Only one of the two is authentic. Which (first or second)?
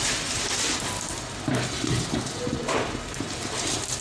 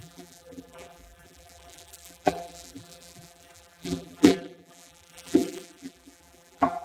first